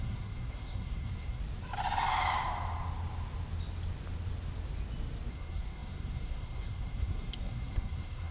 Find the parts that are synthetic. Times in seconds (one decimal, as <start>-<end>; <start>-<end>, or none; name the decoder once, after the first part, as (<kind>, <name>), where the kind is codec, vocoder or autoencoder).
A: 0.0-1.4 (codec, SNAC); 5.3-8.3

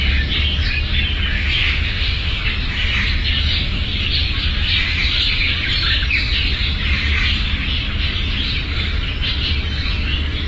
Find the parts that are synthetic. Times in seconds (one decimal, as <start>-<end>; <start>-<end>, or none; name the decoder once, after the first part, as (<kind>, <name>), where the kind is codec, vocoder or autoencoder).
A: 1.6-2.4 (autoencoder, DAC-VAE)

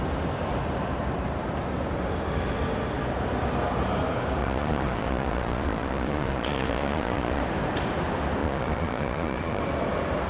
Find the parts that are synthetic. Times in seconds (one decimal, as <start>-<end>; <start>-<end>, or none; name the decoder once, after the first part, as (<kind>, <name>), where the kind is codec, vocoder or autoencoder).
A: 4.4-7.4 (vocoder, Vocos); 8.4-9.6

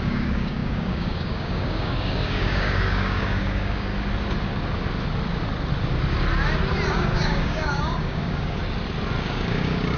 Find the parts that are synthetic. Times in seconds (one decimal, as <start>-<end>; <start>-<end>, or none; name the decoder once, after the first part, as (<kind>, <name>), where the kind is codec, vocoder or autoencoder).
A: 0.0-3.9 (codec, DAC); 6.9-8.6; 9.2-10.0

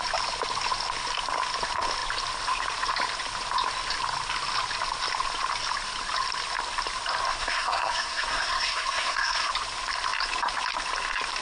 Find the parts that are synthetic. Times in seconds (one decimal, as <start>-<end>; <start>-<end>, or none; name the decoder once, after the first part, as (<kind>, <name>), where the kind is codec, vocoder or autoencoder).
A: 7.4-9.5 (codec, SNAC)

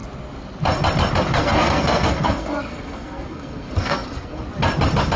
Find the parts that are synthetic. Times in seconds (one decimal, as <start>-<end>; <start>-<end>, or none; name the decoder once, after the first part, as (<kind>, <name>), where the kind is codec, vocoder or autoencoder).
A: 1.3-4.4 (codec, SNAC)

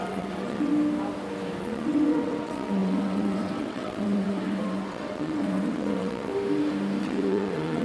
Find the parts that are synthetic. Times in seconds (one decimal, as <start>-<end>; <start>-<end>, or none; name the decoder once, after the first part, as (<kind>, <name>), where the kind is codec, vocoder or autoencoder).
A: 0.0-0.7 (vocoder, WaveNeXt); 1.6-6.3; 7.0-7.8